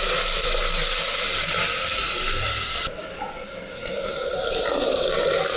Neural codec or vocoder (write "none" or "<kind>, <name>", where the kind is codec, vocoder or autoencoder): none